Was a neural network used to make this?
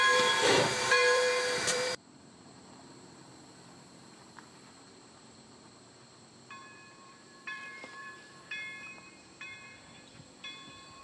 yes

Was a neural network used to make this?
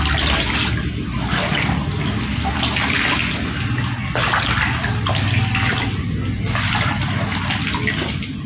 no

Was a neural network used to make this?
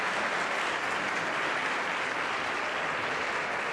no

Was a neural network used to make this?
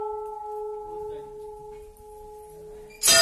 no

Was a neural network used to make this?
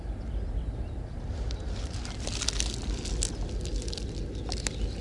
no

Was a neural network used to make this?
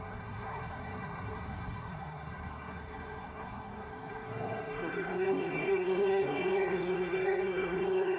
yes